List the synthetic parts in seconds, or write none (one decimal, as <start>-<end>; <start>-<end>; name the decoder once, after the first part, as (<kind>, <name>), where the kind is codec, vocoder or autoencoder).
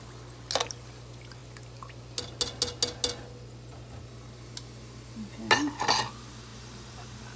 none